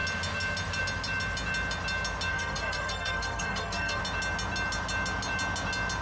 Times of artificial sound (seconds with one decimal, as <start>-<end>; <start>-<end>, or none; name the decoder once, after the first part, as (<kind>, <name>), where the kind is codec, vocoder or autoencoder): 2.3-4.0 (codec, SNAC)